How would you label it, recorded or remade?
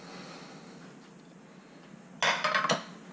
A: recorded